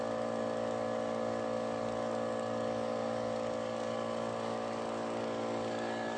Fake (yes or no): yes